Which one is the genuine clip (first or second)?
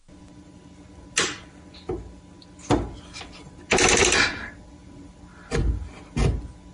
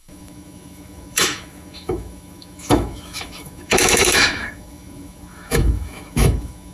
first